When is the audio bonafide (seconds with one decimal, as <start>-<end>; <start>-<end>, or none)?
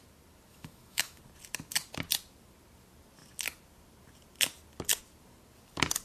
0.0-0.5; 1.2-6.0